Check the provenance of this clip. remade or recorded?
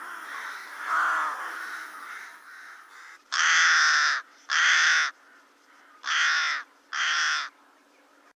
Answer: recorded